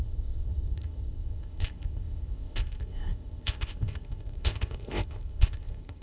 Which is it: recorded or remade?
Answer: remade